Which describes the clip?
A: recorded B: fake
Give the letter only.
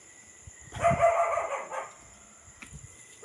B